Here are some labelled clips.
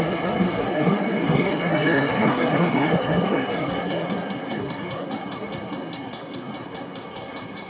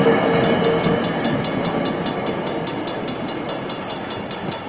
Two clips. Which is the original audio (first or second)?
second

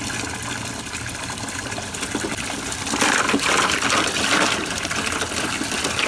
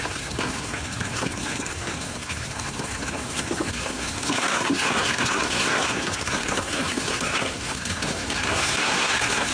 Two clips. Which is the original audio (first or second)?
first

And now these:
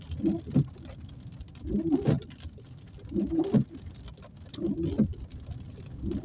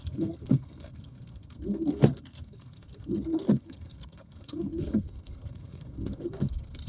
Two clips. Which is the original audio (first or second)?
first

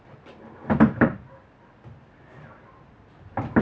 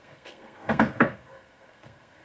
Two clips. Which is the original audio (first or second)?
first